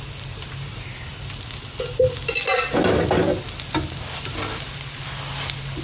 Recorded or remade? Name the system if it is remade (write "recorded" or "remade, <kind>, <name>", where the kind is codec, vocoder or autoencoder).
recorded